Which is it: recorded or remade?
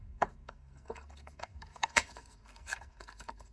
remade